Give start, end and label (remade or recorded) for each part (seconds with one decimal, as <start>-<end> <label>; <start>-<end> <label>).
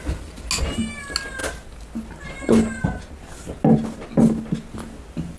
0.0-5.4 recorded